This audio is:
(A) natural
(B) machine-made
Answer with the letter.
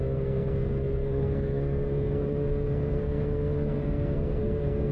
B